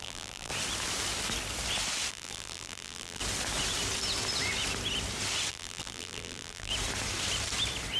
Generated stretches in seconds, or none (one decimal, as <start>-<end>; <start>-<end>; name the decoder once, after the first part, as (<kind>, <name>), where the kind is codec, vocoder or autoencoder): 0.0-0.5 (vocoder, BigVGAN v2); 2.1-3.2; 5.5-6.7